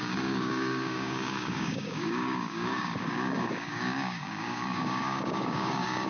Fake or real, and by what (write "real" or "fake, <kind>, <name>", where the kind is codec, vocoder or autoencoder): fake, codec, DAC